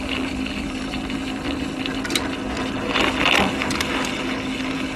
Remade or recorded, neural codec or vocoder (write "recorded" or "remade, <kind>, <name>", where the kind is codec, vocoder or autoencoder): recorded